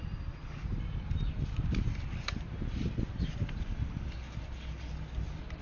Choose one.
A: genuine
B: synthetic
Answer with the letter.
A